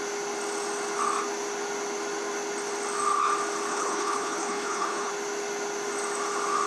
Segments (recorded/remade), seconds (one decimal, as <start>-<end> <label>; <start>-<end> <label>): 0.0-3.7 recorded; 3.7-5.1 remade; 5.1-6.7 recorded